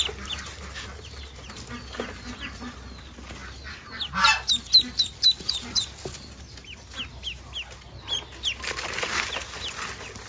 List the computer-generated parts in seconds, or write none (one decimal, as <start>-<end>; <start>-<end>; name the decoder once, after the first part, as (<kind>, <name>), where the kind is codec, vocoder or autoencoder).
none